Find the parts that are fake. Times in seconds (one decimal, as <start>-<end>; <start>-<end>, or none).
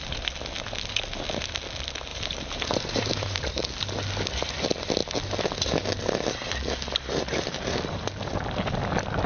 2.1-3.5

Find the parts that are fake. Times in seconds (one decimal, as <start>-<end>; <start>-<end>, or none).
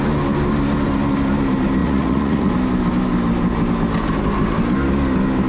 1.8-2.5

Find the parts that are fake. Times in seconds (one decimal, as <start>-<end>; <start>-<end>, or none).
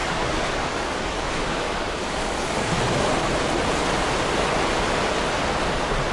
0.0-2.7